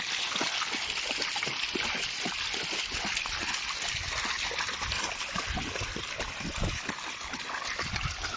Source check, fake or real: real